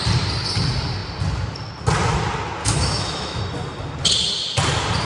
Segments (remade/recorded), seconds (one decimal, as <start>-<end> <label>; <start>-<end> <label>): 0.0-2.6 recorded; 2.6-3.4 remade; 3.4-5.0 recorded